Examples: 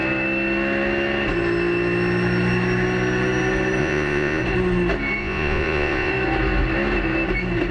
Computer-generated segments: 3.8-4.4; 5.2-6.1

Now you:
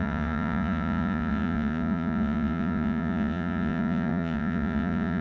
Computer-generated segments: 0.0-5.2

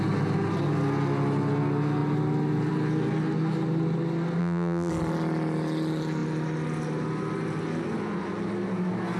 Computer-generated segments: 4.4-4.9

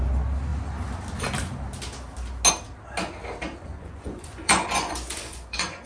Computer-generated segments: 3.7-5.9

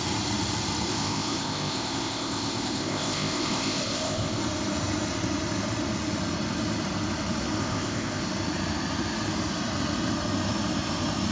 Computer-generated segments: 0.9-4.4; 7.6-8.2

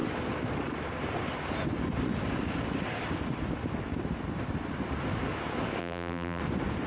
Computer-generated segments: 5.8-6.4

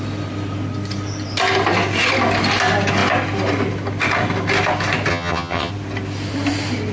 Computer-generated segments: 5.1-5.7

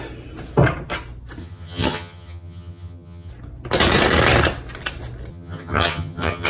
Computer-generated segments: 1.4-3.3; 5.3-6.5